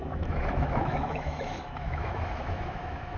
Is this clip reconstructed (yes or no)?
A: yes